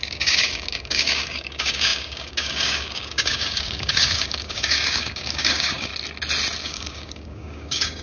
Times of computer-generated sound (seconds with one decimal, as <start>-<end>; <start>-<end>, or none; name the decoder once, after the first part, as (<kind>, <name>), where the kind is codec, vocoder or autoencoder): 0.0-5.9 (codec, DAC); 6.6-8.0